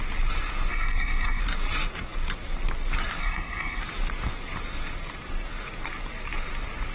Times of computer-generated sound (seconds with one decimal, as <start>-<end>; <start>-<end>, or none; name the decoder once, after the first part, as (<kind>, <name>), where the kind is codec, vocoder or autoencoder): 0.7-1.4 (codec, SNAC); 3.2-3.8